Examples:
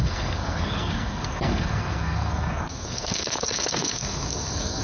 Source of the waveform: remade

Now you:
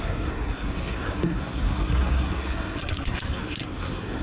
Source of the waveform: remade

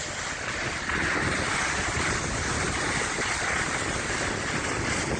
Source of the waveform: recorded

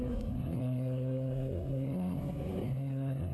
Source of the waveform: remade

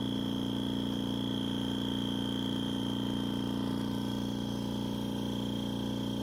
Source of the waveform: recorded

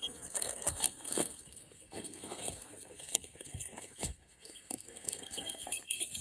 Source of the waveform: remade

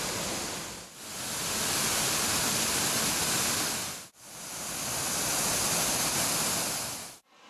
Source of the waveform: recorded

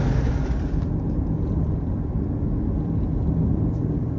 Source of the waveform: recorded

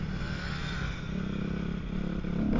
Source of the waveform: recorded